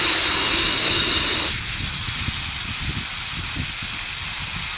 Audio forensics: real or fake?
real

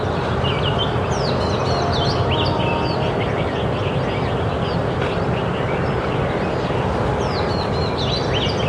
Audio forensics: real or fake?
real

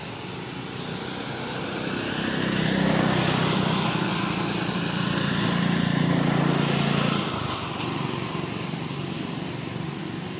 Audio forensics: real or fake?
real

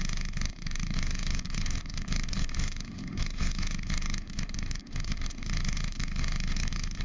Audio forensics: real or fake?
fake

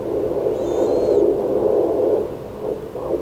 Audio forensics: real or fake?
real